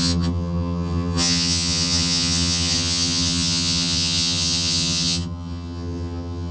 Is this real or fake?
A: fake